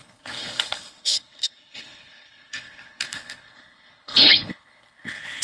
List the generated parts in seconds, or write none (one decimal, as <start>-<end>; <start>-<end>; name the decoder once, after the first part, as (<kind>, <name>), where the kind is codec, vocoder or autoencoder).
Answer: 0.0-5.4 (codec, HILCodec)